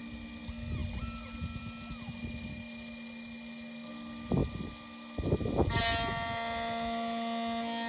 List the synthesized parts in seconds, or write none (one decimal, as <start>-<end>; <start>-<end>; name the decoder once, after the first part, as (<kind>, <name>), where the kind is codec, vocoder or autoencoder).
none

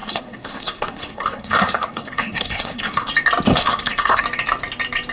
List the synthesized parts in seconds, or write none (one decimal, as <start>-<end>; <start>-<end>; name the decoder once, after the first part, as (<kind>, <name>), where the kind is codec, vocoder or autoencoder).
0.0-3.1 (codec, SNAC); 3.5-4.2

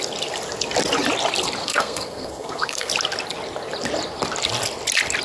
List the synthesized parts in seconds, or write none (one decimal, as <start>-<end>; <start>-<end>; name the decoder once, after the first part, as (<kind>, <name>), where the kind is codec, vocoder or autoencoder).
1.6-2.9 (codec, SNAC)

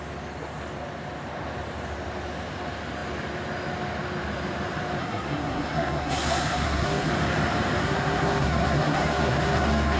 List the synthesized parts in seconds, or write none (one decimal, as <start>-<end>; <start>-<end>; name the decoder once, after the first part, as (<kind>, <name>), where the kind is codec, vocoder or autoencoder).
5.0-7.1 (codec, SNAC); 7.8-10.0